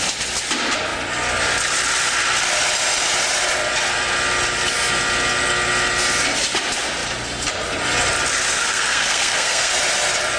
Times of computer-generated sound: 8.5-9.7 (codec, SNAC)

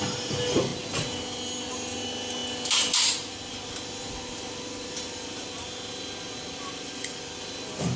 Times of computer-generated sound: none

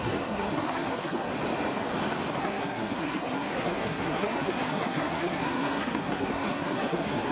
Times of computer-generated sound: 0.0-1.3 (codec, SNAC); 2.4-7.3